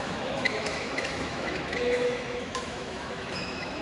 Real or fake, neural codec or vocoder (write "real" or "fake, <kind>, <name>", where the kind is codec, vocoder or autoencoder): fake, autoencoder, DAC-VAE